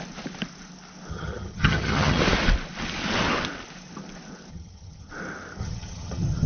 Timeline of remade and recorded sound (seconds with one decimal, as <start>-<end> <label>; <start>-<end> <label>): 0.0-1.1 recorded; 1.1-2.2 remade; 2.2-4.5 recorded; 4.5-5.1 remade; 5.1-5.6 recorded; 5.6-6.5 remade